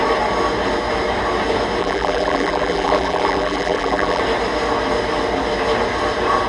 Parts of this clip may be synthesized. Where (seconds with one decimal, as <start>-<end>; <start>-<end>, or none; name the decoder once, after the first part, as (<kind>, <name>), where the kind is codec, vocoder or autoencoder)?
1.8-4.2 (vocoder, BigVGAN v2)